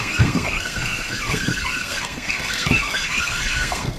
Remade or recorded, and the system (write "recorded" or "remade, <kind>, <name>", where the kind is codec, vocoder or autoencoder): remade, codec, SNAC